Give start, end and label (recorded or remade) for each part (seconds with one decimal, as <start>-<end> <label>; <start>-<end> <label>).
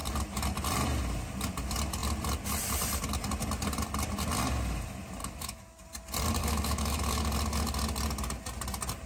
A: 0.0-5.2 recorded; 5.2-5.8 remade; 5.8-6.4 recorded; 6.4-7.1 remade; 7.1-9.1 recorded